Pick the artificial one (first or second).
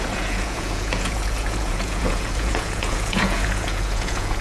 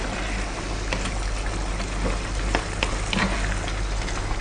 first